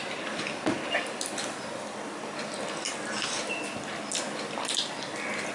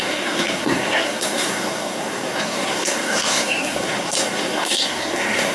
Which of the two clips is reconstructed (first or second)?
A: second